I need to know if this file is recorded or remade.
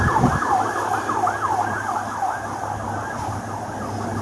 recorded